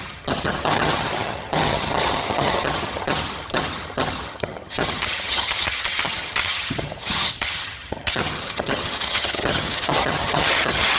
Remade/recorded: remade